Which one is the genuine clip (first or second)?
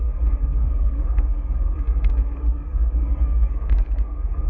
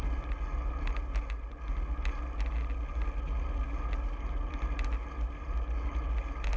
second